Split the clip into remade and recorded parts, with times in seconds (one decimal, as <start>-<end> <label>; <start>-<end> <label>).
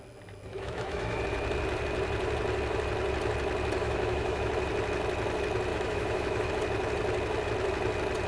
0.0-0.5 recorded; 0.5-1.2 remade; 1.2-3.8 recorded; 3.8-4.5 remade; 4.5-5.7 recorded; 5.7-6.5 remade; 6.5-8.3 recorded